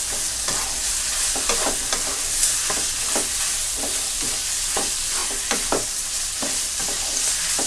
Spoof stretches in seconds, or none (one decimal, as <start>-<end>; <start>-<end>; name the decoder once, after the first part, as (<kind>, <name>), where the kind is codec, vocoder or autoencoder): none